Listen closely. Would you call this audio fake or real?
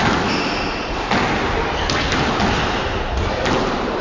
real